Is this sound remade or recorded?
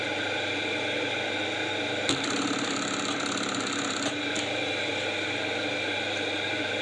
recorded